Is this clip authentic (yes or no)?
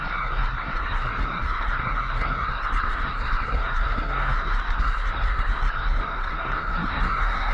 no